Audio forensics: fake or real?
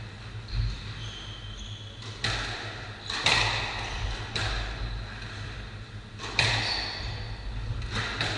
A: real